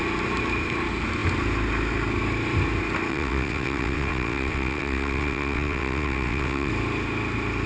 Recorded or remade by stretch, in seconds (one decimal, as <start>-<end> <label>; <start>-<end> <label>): 0.0-3.1 recorded; 3.1-6.7 remade; 6.7-7.7 recorded